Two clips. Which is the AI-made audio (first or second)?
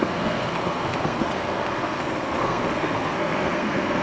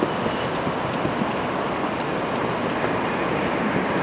first